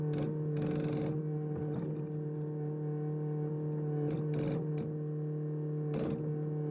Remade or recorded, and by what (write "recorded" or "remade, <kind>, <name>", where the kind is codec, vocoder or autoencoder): recorded